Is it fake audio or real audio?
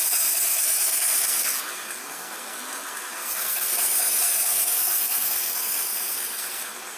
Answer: fake